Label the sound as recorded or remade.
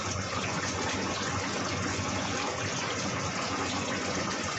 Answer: remade